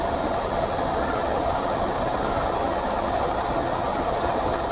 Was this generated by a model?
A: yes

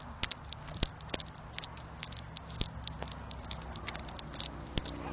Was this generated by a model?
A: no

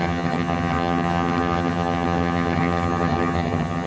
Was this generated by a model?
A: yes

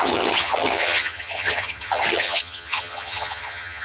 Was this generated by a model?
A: yes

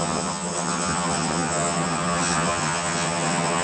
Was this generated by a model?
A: yes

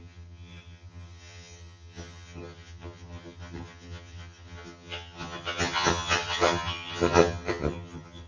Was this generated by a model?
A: yes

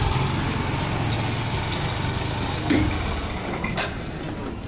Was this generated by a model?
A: no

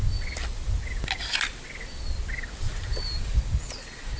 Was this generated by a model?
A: no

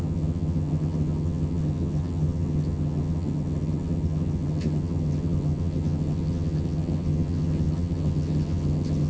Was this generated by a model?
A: yes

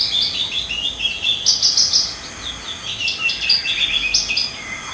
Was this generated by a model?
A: no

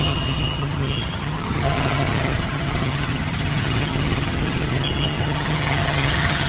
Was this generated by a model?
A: yes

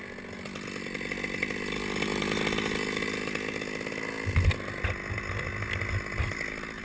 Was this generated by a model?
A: no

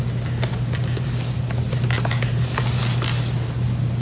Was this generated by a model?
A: no